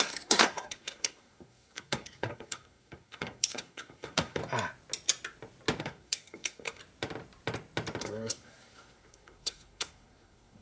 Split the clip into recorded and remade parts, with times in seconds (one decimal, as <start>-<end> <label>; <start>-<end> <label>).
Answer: 0.0-4.4 remade; 4.4-5.8 recorded; 5.8-6.8 remade; 6.8-8.0 recorded; 8.0-10.6 remade